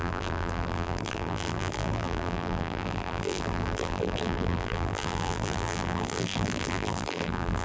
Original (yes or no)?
no